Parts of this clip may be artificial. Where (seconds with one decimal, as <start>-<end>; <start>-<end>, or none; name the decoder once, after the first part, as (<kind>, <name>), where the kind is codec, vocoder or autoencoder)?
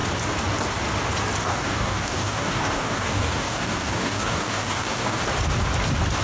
1.5-5.2 (codec, DAC)